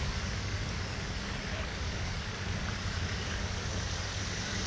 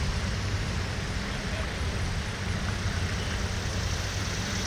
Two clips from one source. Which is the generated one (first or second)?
first